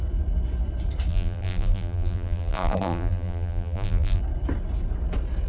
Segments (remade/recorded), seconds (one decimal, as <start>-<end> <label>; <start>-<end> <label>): 0.0-1.1 recorded; 1.1-4.2 remade; 4.2-5.5 recorded